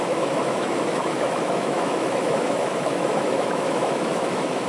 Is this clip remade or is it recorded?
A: remade